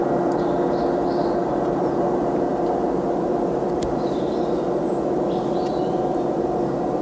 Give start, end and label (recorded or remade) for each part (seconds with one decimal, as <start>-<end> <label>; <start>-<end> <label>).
0.0-7.0 recorded